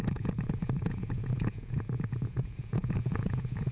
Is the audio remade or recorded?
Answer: remade